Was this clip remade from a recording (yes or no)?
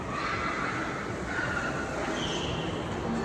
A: no